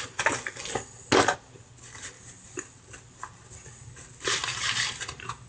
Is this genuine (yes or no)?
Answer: yes